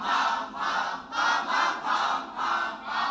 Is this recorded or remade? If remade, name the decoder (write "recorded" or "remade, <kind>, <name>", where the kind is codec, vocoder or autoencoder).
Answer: recorded